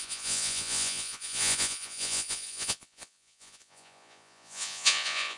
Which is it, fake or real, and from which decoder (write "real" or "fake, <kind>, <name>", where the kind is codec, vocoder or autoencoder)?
fake, vocoder, Vocos